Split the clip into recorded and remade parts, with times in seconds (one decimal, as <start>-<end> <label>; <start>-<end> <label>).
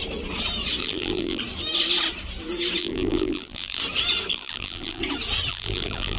0.0-0.8 recorded; 0.8-1.4 remade; 1.4-2.8 recorded; 2.8-3.8 remade; 3.8-4.3 recorded; 4.3-5.0 remade; 5.0-5.5 recorded; 5.5-6.2 remade